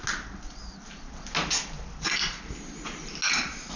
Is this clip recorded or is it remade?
recorded